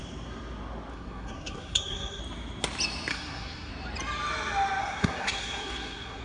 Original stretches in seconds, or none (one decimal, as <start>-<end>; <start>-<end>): 0.0-0.9; 2.2-3.1; 3.7-4.8